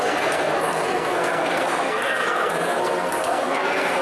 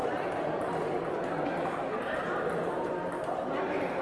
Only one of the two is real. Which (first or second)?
second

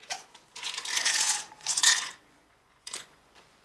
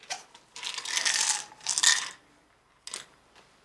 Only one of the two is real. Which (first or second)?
second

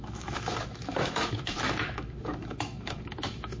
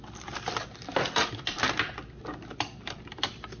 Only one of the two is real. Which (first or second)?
second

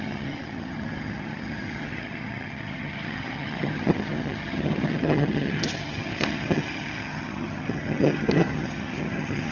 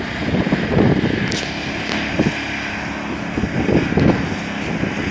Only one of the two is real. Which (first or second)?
second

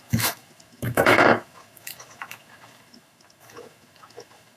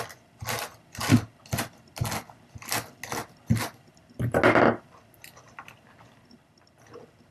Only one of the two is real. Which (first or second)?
second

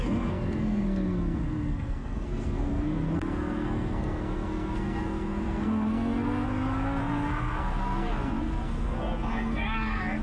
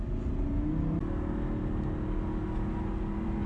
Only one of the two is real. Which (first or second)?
second